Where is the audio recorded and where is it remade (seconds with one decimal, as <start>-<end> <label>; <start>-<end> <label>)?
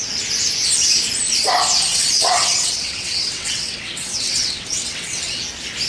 0.0-1.9 recorded; 1.9-5.4 remade; 5.4-5.9 recorded